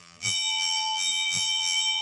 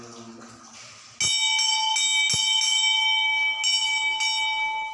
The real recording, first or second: second